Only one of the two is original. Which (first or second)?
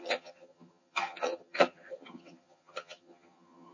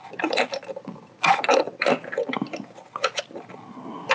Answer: second